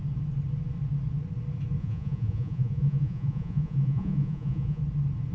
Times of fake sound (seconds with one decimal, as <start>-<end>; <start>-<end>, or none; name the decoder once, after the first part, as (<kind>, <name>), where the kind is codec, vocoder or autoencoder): 1.8-4.8 (vocoder, Vocos)